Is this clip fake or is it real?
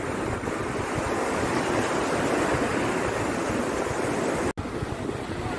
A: real